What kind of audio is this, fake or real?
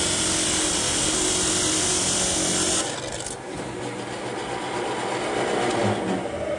real